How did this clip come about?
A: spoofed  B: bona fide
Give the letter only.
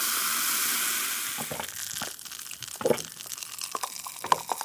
B